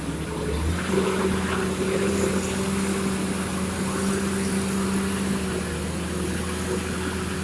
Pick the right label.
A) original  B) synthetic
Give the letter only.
A